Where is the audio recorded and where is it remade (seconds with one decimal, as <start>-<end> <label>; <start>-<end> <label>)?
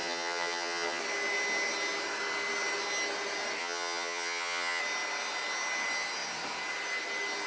0.0-1.0 remade; 1.0-3.6 recorded; 3.6-4.8 remade; 4.8-7.5 recorded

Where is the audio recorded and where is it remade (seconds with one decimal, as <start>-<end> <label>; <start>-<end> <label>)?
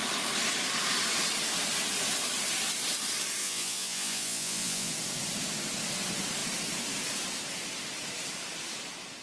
0.0-3.4 recorded; 3.4-4.9 remade; 4.9-9.2 recorded